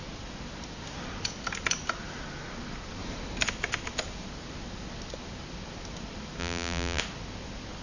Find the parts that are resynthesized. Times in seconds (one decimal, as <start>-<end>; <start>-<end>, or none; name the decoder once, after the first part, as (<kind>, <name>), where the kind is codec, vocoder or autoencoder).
6.4-7.0 (vocoder, BigVGAN v2)